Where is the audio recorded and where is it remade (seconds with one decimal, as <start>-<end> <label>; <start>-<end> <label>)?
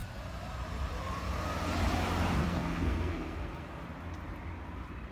0.0-2.4 recorded; 2.4-3.8 remade; 3.8-5.1 recorded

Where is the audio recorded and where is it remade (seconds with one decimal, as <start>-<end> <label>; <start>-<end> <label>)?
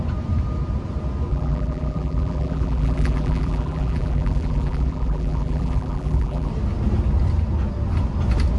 0.0-1.3 recorded; 1.3-6.5 remade; 6.5-8.6 recorded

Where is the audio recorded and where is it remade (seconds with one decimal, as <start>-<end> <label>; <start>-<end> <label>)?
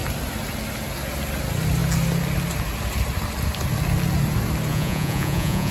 0.0-4.7 recorded; 4.7-5.7 remade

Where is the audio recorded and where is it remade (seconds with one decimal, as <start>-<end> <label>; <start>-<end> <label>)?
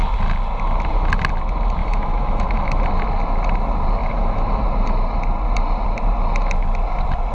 0.0-1.8 recorded; 1.8-2.8 remade; 2.8-4.0 recorded; 4.0-4.6 remade; 4.6-7.3 recorded